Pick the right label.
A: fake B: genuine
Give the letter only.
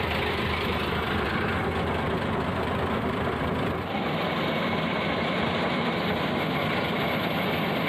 A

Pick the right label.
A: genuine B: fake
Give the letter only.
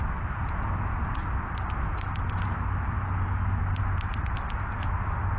A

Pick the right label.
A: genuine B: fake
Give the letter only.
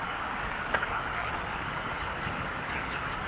B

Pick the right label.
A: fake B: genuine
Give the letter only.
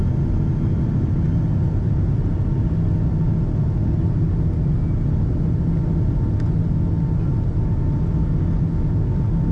B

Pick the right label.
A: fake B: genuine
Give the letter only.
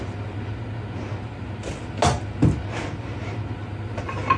B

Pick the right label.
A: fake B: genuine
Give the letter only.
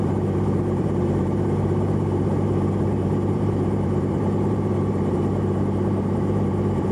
A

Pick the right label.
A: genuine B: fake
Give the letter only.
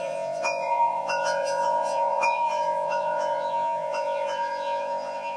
B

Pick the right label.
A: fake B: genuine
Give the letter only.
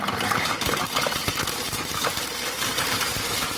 A